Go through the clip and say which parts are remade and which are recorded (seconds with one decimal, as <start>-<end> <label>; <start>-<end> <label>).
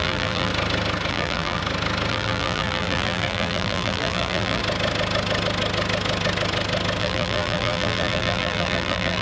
0.0-0.5 remade; 0.5-1.1 recorded; 1.1-1.6 remade; 1.6-2.1 recorded; 2.1-4.6 remade; 4.6-7.0 recorded; 7.0-9.2 remade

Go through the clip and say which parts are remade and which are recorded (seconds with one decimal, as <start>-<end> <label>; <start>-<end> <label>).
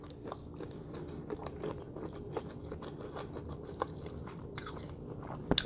0.0-1.4 recorded; 1.4-2.5 remade; 2.5-3.4 recorded; 3.4-4.7 remade; 4.7-5.7 recorded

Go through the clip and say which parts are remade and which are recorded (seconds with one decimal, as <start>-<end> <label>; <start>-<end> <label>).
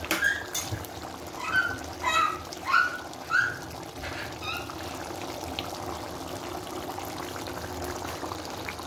0.0-8.9 recorded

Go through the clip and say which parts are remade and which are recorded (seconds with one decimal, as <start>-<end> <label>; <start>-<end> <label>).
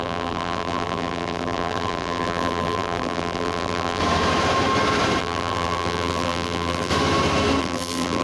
0.0-4.0 remade; 4.0-5.2 recorded; 5.2-6.9 remade; 6.9-7.6 recorded; 7.6-8.2 remade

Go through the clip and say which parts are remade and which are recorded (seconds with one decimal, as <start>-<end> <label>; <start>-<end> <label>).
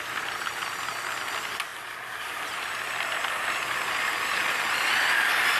0.0-5.6 recorded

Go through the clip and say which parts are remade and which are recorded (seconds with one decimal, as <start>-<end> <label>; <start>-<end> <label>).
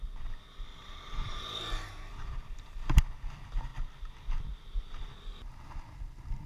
0.0-0.7 recorded; 0.7-3.0 remade; 3.0-6.5 recorded